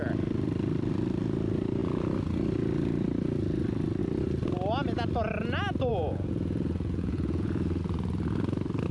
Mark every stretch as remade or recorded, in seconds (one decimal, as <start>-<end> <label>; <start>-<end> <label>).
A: 0.0-5.9 recorded; 5.9-7.8 remade; 7.8-8.9 recorded

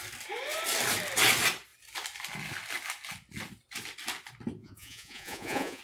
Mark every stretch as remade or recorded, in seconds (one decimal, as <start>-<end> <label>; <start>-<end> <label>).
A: 0.0-4.6 recorded; 4.6-5.8 remade

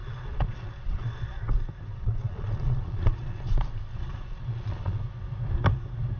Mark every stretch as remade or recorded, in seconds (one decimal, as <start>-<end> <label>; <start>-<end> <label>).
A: 0.0-1.4 remade; 1.4-1.9 recorded; 1.9-3.4 remade; 3.4-3.9 recorded; 3.9-5.0 remade; 5.0-6.2 recorded

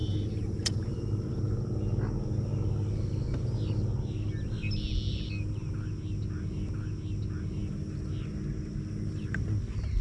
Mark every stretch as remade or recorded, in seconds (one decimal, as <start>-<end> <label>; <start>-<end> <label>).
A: 0.0-1.4 remade; 1.4-10.0 recorded

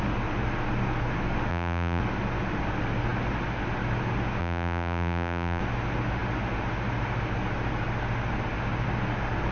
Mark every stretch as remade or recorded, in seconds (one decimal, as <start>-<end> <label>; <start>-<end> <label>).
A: 0.0-1.5 recorded; 1.5-2.0 remade; 2.0-4.4 recorded; 4.4-5.6 remade; 5.6-9.5 recorded

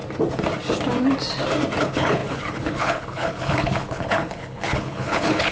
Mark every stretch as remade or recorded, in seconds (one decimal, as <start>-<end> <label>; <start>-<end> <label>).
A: 0.0-1.8 recorded; 1.8-5.5 remade